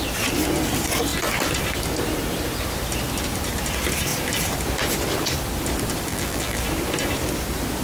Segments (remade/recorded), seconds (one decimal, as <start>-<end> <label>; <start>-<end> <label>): 0.0-6.1 recorded; 6.1-6.6 remade; 6.6-7.8 recorded